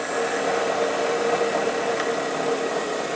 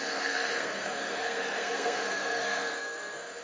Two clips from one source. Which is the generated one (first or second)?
second